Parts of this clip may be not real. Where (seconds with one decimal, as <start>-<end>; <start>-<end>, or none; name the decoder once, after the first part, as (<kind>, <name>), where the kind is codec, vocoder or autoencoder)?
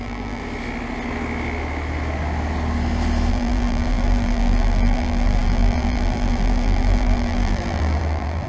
0.0-0.4 (vocoder, BigVGAN v2); 3.3-8.5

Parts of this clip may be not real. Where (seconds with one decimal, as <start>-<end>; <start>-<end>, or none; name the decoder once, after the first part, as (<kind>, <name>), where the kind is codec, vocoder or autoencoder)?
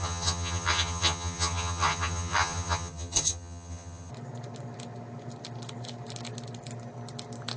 0.0-4.1 (vocoder, HiFi-GAN)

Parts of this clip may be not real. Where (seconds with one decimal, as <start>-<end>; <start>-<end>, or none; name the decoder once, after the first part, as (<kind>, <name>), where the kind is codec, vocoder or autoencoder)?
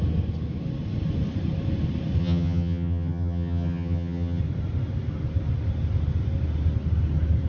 2.2-4.4 (vocoder, HiFi-GAN)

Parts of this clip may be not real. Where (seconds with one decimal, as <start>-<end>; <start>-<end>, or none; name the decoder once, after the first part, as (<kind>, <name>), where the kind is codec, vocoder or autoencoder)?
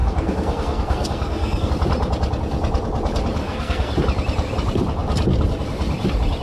0.0-1.7 (codec, SNAC); 3.4-3.9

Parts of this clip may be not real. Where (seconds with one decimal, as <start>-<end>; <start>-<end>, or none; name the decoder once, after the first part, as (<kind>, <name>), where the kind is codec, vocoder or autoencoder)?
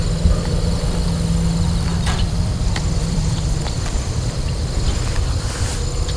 1.9-5.6 (vocoder, BigVGAN v2)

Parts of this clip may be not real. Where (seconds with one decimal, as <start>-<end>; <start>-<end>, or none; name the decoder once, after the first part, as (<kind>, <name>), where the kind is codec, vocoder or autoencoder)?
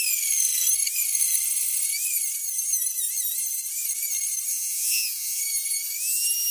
4.5-5.4 (vocoder, Vocos)